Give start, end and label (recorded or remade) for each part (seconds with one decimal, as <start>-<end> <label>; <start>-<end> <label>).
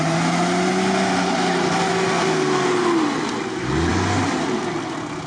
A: 0.0-5.3 recorded